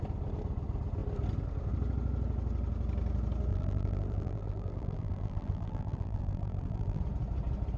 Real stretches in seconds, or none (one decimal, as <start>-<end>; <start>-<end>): 0.0-3.5; 7.0-7.8